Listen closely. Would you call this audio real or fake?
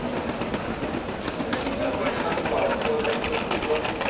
real